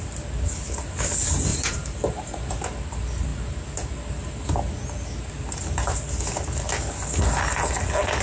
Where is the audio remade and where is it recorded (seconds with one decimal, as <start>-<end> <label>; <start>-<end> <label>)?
0.0-1.5 recorded; 1.5-2.5 remade; 2.5-8.2 recorded